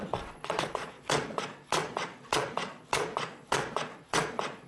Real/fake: fake